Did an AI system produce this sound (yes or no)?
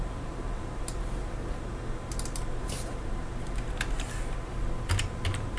no